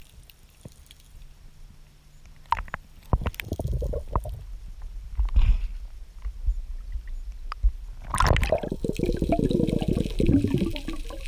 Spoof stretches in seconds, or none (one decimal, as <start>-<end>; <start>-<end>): none